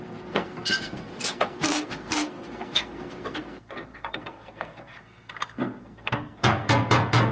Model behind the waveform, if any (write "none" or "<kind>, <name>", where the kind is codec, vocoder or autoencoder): codec, SNAC